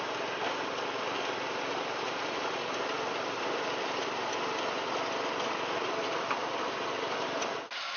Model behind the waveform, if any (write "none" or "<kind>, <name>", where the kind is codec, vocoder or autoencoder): none